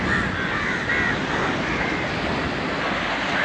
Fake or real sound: real